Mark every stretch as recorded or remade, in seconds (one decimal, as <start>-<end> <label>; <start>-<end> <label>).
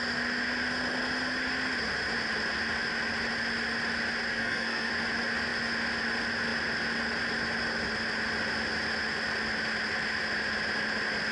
0.0-4.3 recorded; 4.3-4.9 remade; 4.9-11.3 recorded